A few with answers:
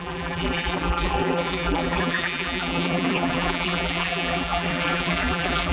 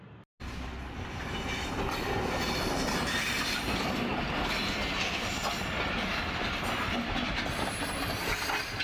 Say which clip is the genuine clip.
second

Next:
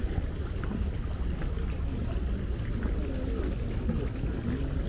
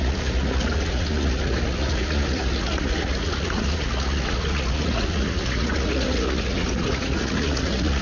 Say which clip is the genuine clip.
first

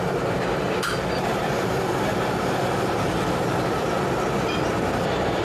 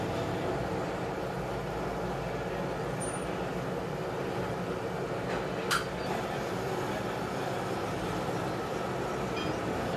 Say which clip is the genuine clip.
second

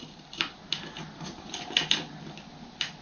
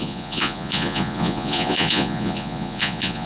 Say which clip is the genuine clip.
first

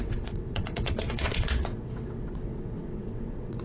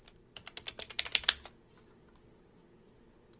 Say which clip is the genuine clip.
second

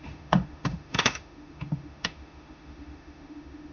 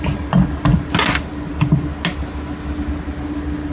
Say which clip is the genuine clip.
second